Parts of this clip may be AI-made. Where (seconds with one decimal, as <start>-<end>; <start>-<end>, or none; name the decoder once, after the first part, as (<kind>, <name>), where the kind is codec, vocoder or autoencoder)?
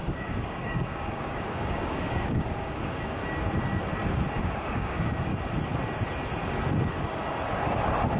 0.0-3.2 (codec, DAC); 4.4-5.3